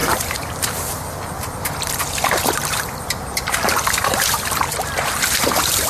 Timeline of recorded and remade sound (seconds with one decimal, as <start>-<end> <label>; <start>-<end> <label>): 0.0-0.7 remade; 0.7-4.0 recorded; 4.0-5.4 remade; 5.4-5.9 recorded